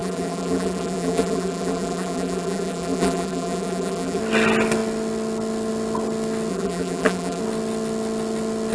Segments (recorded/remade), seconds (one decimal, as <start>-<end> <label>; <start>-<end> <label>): 0.0-4.2 remade; 4.2-6.5 recorded; 6.5-7.4 remade; 7.4-8.7 recorded